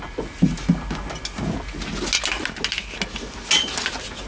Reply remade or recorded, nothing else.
recorded